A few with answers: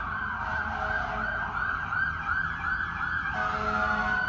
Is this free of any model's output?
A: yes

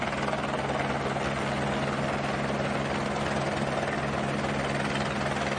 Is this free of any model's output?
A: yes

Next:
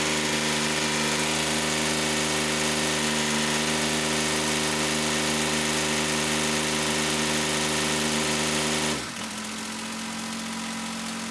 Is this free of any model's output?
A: yes